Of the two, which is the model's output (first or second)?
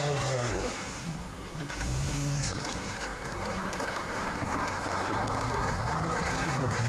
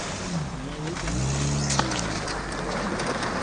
first